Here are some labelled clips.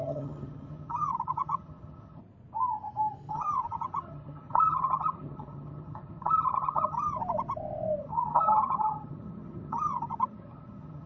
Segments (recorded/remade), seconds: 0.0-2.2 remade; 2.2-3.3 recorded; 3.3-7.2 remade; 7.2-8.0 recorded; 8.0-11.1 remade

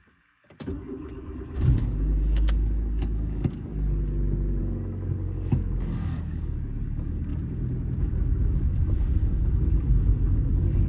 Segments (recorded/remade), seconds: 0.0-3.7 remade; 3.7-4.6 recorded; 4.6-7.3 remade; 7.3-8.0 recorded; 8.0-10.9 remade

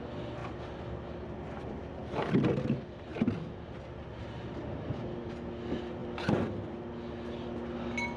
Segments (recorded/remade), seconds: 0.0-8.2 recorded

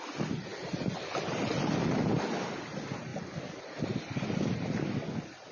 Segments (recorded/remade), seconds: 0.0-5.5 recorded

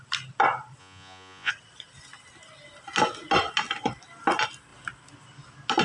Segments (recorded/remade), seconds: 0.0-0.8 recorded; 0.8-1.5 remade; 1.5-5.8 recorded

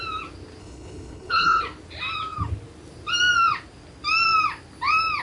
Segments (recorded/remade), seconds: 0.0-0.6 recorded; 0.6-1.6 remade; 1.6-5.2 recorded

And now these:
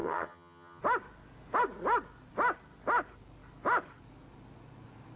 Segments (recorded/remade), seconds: 0.0-0.8 remade; 0.8-5.2 recorded

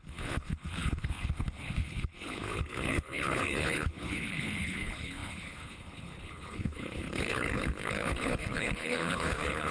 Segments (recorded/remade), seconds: 0.0-9.7 remade